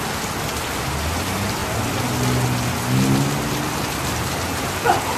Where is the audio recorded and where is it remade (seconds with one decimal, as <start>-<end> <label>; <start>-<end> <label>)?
0.0-5.2 recorded